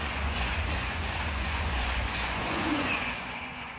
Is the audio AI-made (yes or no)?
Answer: yes